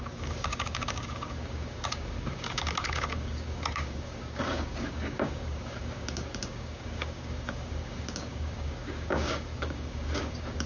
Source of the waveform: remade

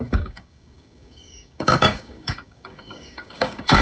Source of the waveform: remade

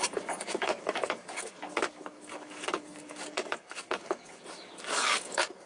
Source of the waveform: remade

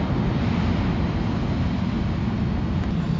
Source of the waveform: recorded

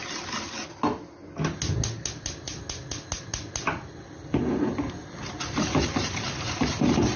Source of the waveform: recorded